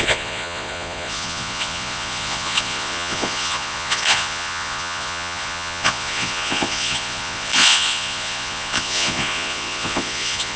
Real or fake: fake